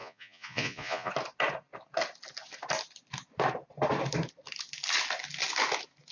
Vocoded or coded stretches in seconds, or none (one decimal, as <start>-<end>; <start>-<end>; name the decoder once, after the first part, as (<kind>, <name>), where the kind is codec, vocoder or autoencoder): 0.0-1.1 (vocoder, Vocos)